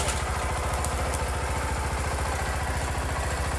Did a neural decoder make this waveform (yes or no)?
no